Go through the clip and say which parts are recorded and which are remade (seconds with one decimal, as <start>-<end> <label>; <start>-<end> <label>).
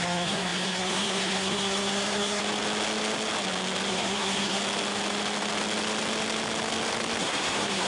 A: 0.0-2.4 remade; 2.4-3.9 recorded; 3.9-4.6 remade; 4.6-7.2 recorded; 7.2-7.9 remade